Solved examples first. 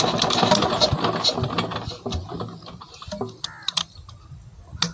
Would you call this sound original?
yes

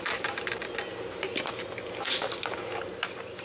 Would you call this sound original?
yes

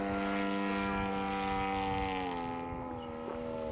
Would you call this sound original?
yes